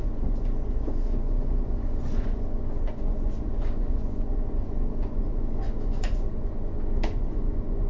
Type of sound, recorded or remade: remade